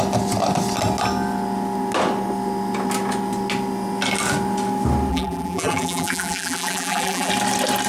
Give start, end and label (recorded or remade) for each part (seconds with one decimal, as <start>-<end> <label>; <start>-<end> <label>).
0.0-5.1 recorded; 5.1-7.3 remade; 7.3-7.9 recorded